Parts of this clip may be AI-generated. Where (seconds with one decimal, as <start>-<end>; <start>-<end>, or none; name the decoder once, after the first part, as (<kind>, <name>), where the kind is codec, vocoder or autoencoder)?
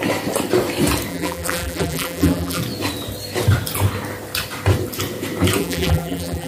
1.1-2.6 (vocoder, BigVGAN v2); 5.6-6.5